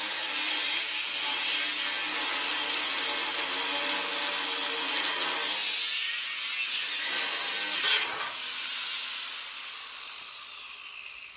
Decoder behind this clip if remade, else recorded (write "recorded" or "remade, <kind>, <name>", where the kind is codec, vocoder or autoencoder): recorded